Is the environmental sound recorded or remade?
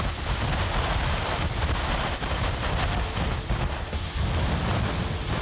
recorded